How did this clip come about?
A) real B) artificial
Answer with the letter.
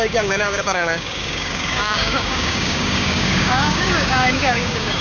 B